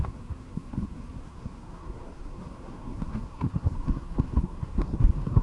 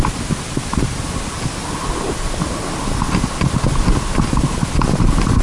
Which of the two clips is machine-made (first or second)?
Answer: first